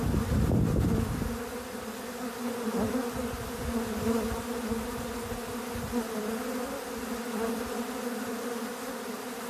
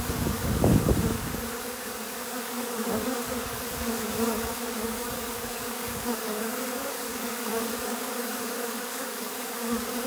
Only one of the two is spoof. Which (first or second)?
second